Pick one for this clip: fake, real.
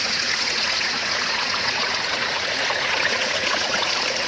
fake